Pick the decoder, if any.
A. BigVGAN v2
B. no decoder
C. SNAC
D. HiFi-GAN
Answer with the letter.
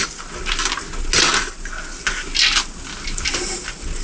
B